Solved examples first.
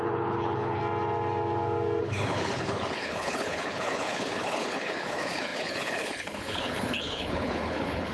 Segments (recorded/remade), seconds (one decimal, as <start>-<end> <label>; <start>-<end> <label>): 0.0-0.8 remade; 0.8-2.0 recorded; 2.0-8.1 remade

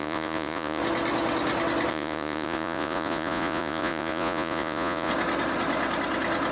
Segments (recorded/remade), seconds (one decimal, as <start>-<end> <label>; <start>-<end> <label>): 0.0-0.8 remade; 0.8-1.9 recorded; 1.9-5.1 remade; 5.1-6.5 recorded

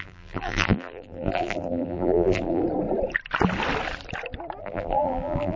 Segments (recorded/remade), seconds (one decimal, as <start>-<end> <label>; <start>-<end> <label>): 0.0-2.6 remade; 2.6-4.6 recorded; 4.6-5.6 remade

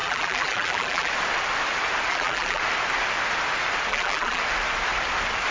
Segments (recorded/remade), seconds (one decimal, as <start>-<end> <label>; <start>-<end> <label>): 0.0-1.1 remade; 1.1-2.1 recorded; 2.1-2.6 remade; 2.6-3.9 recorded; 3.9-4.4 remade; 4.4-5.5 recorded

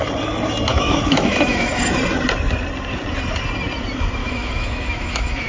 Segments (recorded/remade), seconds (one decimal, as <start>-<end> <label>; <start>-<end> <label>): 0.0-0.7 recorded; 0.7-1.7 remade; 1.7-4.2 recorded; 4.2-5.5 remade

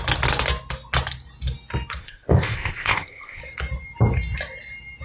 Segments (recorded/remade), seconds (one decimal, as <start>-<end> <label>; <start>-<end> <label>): 0.0-2.0 recorded; 2.0-3.4 remade; 3.4-5.0 recorded

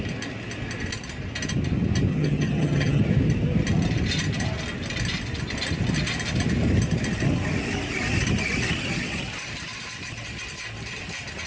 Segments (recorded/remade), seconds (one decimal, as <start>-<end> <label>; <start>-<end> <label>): 0.0-2.1 recorded; 2.1-3.0 remade; 3.0-11.5 recorded